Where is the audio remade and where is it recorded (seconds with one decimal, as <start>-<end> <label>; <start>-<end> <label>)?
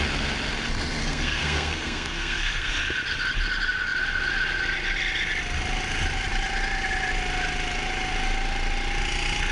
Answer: 0.0-1.0 recorded; 1.0-2.7 remade; 2.7-9.5 recorded